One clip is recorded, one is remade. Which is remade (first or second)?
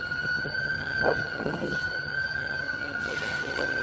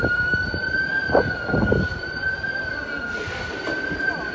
first